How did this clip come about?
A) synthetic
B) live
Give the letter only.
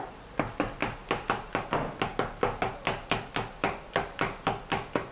B